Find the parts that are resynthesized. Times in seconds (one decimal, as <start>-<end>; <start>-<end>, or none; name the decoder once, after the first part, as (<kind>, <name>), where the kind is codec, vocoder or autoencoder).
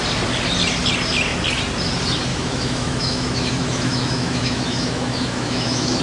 2.3-6.0 (autoencoder, DAC-VAE)